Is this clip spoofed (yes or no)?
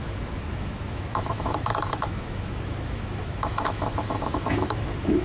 yes